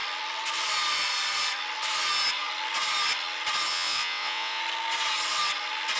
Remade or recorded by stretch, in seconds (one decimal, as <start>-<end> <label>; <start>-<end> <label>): 0.0-3.7 recorded; 3.7-4.6 remade; 4.6-6.0 recorded